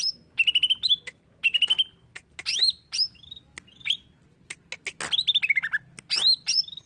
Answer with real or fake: real